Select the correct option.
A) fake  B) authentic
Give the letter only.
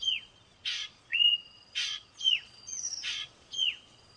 A